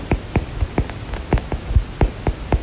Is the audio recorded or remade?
recorded